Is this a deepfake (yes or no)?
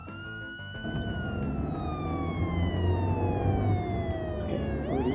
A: no